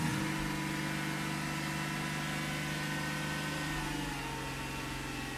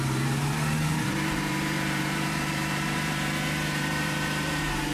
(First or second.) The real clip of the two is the first